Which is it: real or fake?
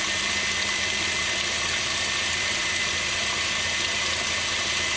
fake